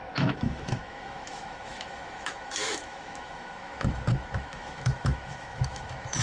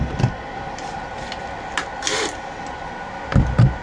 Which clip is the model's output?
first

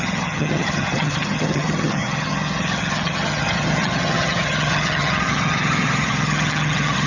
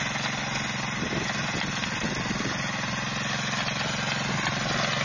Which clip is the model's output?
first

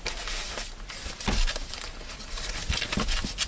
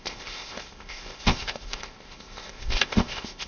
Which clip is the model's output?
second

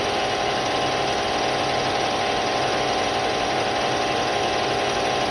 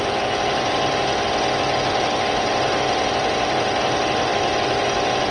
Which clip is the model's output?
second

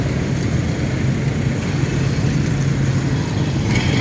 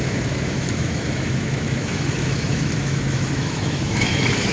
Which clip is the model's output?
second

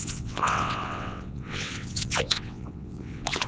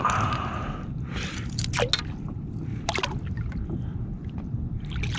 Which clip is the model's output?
first